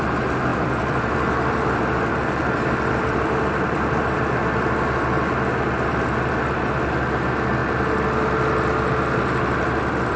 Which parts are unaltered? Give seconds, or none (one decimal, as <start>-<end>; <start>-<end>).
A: 0.0-0.5; 4.3-10.2